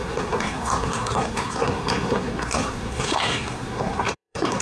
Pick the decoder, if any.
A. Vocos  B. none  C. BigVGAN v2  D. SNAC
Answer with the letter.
D